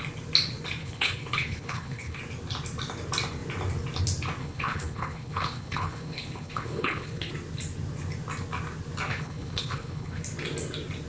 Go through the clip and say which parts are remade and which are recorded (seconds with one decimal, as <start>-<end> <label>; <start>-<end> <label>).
0.0-0.8 recorded; 0.8-2.2 remade; 2.2-4.4 recorded; 4.4-7.3 remade; 7.3-9.1 recorded; 9.1-10.2 remade; 10.2-11.1 recorded